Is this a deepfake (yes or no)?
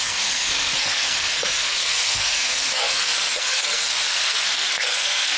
yes